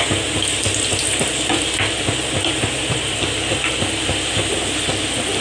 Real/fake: real